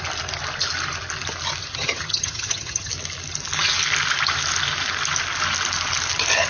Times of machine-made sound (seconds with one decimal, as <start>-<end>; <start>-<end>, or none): 1.6-2.9